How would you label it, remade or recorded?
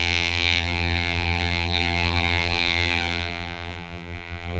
remade